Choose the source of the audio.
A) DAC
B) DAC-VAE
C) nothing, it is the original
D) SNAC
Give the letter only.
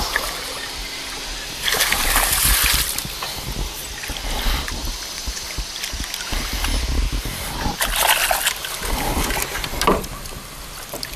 C